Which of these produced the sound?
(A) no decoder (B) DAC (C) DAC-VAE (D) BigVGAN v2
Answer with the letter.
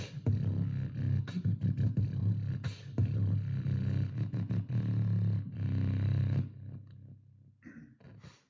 A